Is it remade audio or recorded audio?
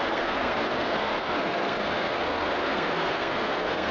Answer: remade